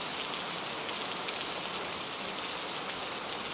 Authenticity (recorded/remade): recorded